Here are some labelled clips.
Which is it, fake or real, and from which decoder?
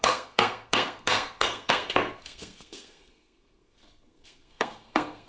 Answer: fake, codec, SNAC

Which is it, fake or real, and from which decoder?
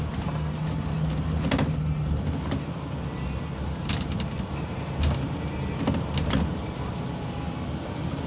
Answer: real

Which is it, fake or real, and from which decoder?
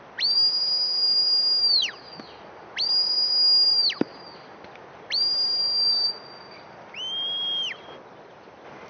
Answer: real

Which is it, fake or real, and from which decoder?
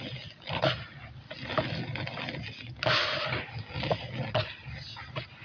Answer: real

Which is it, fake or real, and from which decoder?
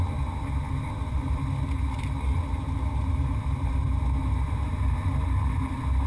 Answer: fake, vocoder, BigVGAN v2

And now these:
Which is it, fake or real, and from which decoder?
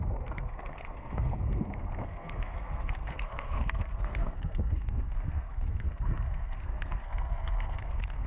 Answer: fake, codec, SNAC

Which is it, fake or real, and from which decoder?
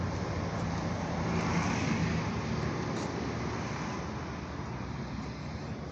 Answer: real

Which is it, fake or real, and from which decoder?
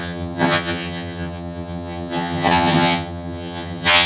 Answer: fake, vocoder, HiFi-GAN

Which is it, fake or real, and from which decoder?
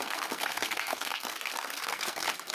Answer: fake, codec, SNAC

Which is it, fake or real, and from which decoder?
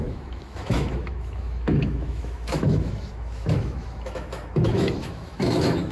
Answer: fake, autoencoder, DAC-VAE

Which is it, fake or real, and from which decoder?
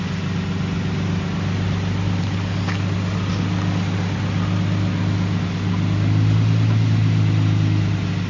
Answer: real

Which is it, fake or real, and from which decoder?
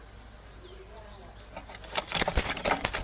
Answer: real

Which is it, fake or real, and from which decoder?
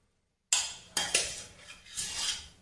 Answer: real